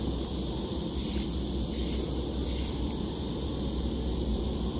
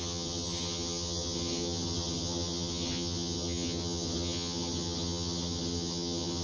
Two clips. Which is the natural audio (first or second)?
first